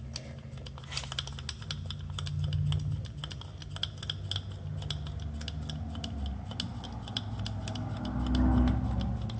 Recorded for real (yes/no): yes